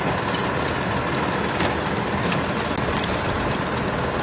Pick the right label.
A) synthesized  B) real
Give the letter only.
B